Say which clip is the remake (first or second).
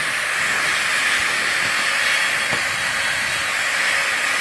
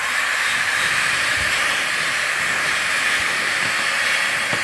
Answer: second